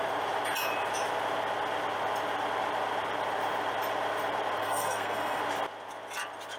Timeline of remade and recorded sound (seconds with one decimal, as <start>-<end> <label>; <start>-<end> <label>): 0.0-4.6 recorded; 4.6-5.4 remade; 5.4-6.6 recorded